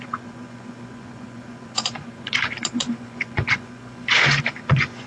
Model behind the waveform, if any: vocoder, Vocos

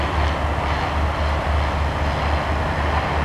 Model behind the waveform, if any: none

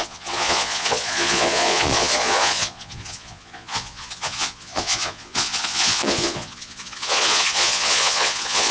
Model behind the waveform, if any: vocoder, Vocos